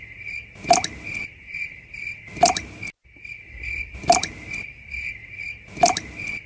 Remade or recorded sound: recorded